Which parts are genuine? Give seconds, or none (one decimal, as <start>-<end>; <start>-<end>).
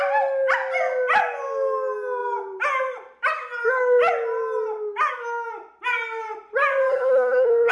0.0-6.9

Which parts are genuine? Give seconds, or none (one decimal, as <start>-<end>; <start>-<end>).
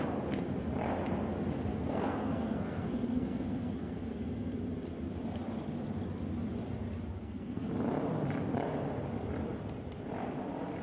0.0-1.7; 4.6-7.2; 7.7-10.8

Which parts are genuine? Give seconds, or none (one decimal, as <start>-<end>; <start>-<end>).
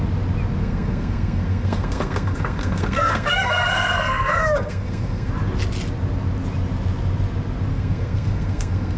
0.0-0.6; 5.3-7.7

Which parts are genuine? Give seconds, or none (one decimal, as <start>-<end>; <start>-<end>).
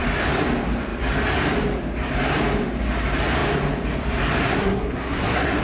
0.0-4.4